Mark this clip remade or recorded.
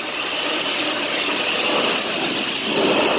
recorded